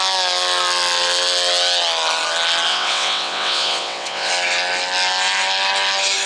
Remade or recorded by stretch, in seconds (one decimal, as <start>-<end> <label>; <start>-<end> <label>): 0.0-2.7 recorded; 2.7-4.3 remade; 4.3-6.3 recorded